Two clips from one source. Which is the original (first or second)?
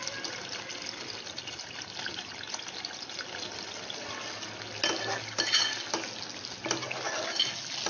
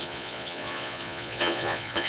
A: first